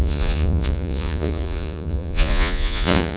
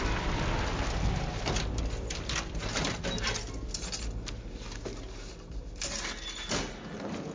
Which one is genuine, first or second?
second